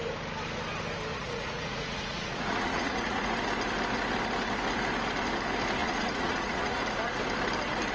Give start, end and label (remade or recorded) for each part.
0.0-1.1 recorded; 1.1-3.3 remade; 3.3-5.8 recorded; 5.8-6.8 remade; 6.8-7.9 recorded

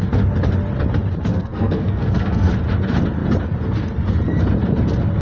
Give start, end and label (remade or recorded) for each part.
0.0-1.3 recorded; 1.3-2.5 remade; 2.5-5.2 recorded

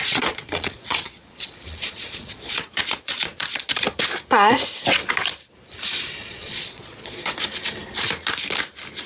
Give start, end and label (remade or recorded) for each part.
0.0-3.6 remade; 3.6-6.2 recorded; 6.2-7.3 remade; 7.3-9.1 recorded